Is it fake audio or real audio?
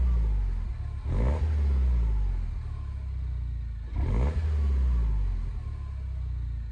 real